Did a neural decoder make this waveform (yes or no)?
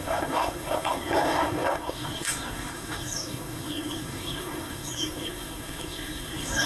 yes